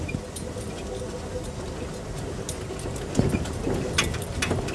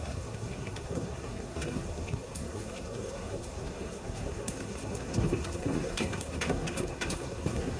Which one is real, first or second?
first